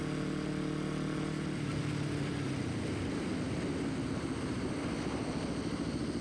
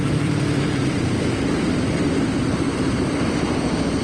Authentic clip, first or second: first